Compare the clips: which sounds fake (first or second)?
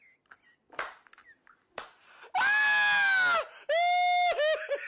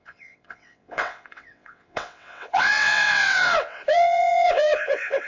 second